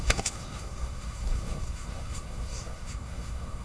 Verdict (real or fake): fake